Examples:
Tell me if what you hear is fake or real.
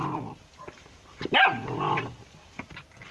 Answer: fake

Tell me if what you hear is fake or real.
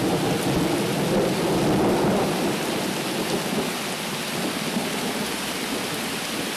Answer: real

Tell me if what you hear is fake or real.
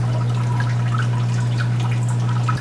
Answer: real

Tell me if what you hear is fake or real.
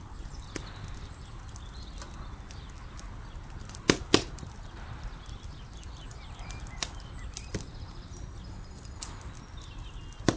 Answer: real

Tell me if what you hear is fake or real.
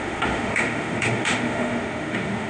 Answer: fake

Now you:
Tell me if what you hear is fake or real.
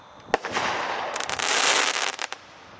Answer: real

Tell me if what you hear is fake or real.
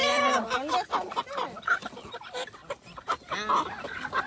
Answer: real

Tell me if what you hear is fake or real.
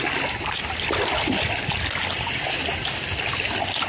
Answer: real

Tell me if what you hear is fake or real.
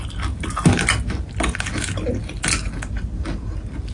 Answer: real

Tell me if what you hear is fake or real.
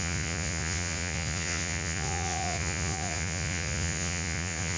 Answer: fake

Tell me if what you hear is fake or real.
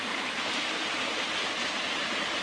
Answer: real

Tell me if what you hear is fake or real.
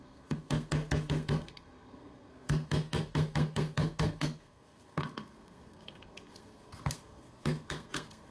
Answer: fake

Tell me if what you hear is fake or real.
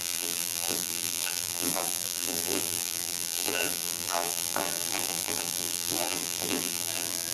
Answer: fake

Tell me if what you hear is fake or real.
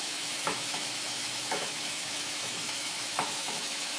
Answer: fake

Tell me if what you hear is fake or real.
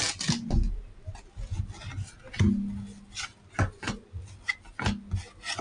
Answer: real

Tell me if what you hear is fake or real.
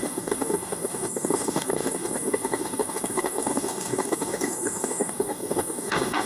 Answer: fake